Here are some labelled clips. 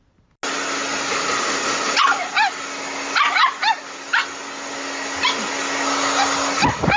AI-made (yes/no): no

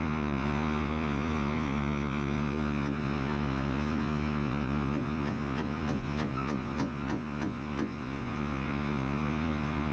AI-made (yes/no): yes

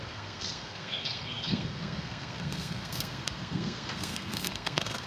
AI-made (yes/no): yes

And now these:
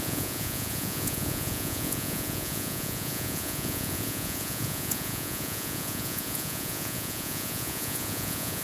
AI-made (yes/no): yes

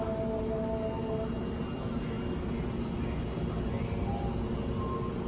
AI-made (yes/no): no